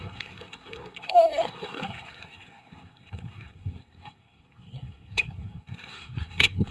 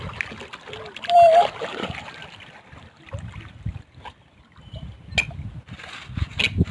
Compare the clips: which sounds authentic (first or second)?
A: second